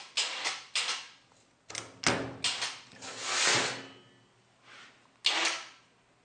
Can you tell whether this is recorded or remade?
recorded